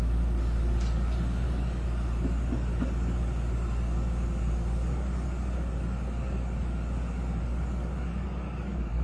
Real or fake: fake